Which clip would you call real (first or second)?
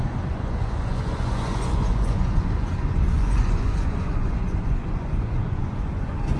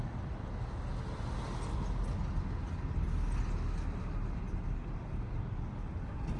second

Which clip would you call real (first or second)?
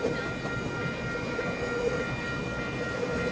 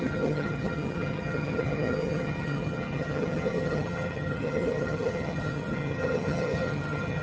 first